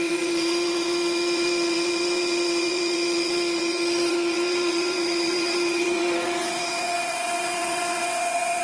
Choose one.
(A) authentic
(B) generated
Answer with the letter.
B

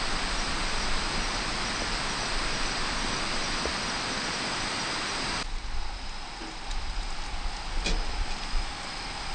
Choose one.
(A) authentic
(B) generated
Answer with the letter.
A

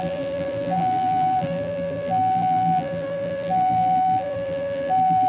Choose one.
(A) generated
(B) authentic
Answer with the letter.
A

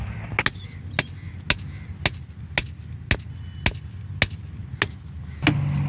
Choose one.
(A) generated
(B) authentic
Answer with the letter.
B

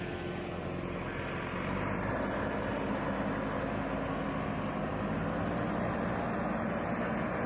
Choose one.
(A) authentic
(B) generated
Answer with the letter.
A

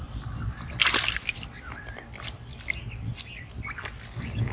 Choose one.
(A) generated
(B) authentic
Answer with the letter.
A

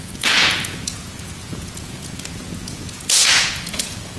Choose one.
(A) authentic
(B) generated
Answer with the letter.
B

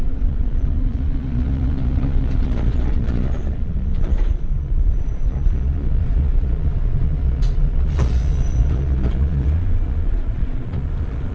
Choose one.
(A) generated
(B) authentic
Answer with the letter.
A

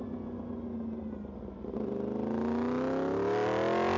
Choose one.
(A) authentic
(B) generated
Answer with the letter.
A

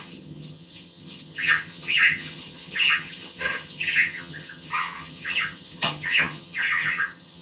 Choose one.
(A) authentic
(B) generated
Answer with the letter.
B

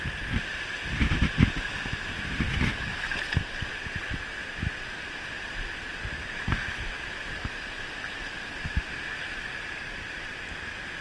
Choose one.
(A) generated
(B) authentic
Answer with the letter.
B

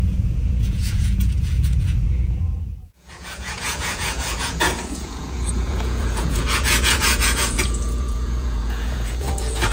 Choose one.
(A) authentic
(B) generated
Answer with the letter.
B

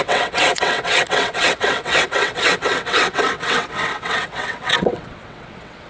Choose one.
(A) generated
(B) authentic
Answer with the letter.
A